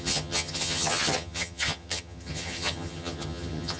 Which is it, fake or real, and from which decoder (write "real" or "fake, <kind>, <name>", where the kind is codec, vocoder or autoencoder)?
fake, vocoder, HiFi-GAN